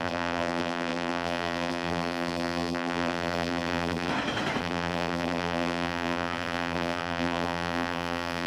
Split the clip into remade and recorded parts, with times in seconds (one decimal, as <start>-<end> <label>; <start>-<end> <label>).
0.0-4.1 remade; 4.1-4.6 recorded; 4.6-8.5 remade